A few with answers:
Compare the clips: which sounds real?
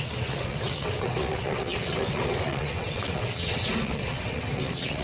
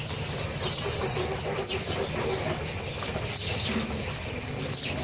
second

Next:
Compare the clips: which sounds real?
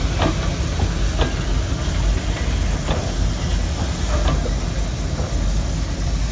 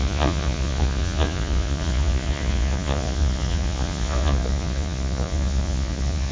first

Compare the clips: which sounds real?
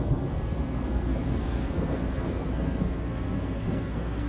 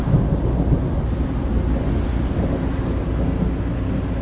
second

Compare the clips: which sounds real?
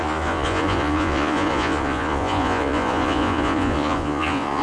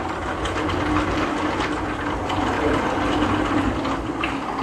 second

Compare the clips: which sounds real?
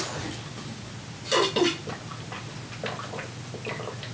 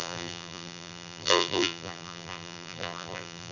first